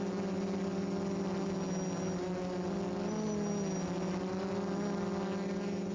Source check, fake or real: real